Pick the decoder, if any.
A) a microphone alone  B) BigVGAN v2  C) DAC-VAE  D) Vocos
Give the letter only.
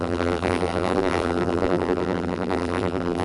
B